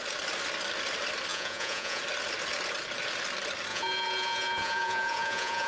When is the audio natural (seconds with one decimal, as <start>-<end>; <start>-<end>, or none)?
0.0-1.3; 2.0-3.7